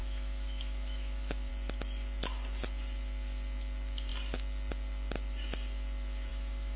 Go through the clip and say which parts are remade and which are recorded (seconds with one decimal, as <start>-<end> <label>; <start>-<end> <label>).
0.0-1.5 remade; 1.5-6.3 recorded; 6.3-6.8 remade

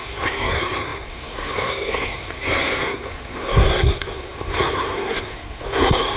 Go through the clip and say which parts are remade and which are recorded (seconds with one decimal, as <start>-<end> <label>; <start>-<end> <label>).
0.0-6.2 remade